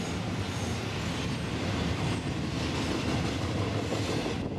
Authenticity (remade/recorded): recorded